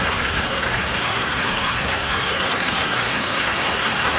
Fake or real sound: fake